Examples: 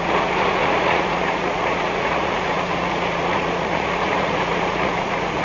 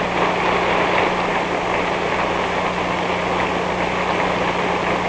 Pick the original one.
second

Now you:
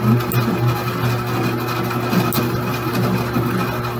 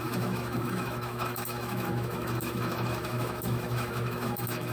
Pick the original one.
first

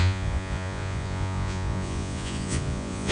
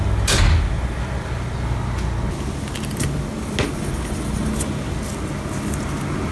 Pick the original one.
second